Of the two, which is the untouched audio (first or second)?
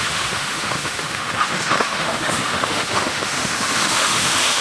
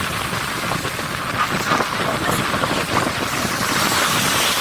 second